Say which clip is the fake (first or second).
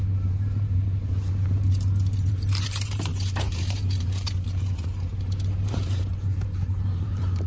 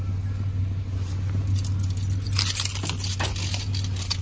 first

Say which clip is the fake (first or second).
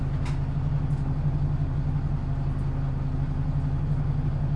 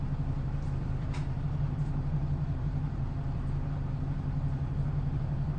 second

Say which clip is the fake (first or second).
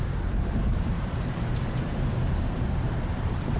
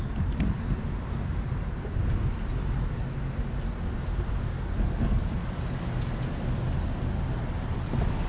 first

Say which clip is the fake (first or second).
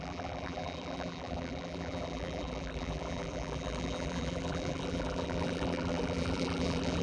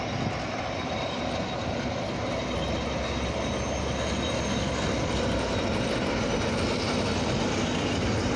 first